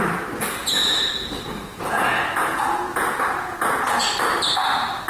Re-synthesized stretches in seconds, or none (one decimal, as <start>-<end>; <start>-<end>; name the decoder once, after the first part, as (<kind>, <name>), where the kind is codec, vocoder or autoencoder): 0.6-1.1 (vocoder, Vocos); 1.7-4.1